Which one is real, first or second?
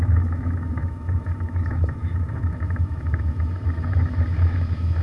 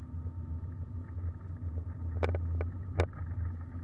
second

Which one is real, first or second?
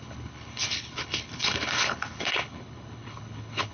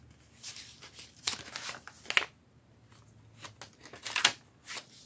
second